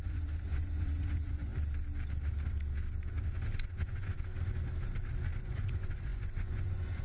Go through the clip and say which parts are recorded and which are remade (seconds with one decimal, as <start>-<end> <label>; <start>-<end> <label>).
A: 0.0-1.5 remade; 1.5-3.3 recorded; 3.3-4.3 remade; 4.3-5.4 recorded; 5.4-7.0 remade